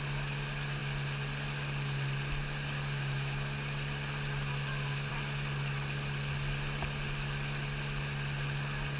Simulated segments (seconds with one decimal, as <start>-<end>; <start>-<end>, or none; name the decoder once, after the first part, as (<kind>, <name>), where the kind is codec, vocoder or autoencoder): none